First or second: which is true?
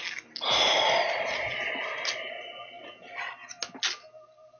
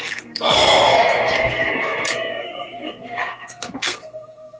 first